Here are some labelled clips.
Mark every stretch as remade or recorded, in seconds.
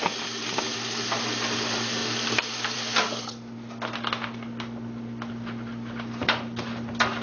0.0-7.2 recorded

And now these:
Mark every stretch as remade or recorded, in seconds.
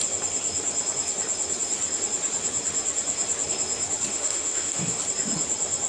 0.0-4.1 recorded; 4.1-5.0 remade; 5.0-5.9 recorded